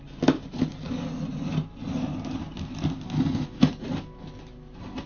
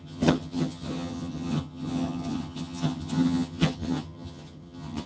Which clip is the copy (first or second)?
second